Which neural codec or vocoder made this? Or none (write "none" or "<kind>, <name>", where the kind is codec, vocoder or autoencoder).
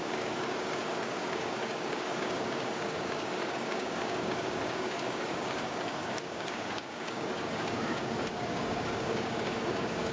codec, DAC